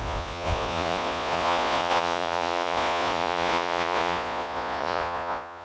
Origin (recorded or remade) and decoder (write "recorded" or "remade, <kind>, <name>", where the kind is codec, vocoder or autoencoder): remade, vocoder, Vocos